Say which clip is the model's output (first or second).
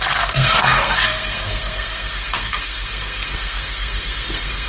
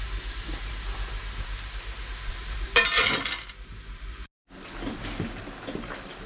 first